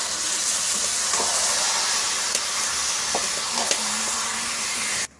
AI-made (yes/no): no